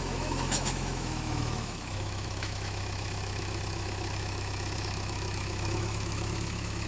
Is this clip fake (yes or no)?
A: yes